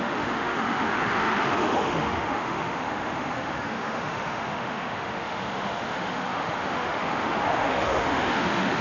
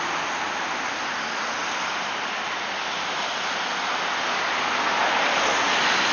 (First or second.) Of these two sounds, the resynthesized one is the first